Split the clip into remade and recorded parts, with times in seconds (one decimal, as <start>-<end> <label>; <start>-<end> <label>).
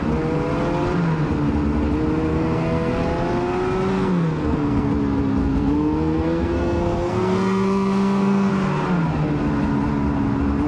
0.0-2.3 recorded; 2.3-3.0 remade; 3.0-3.9 recorded; 3.9-4.9 remade; 4.9-5.4 recorded; 5.4-8.5 remade; 8.5-10.7 recorded